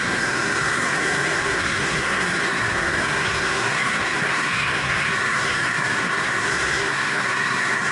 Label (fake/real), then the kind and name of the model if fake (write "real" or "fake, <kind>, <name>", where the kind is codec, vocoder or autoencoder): fake, codec, SNAC